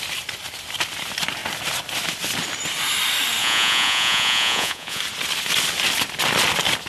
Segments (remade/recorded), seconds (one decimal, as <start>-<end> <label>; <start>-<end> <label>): 0.0-3.4 recorded; 3.4-5.0 remade; 5.0-6.9 recorded